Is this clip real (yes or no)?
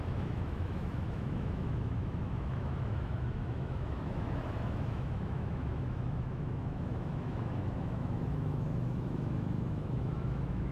no